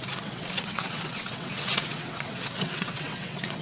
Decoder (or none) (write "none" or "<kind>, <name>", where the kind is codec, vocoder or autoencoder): vocoder, WaveNeXt